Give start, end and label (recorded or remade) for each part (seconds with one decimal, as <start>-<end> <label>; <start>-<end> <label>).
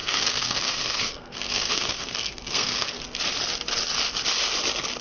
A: 0.0-3.0 remade; 3.0-5.0 recorded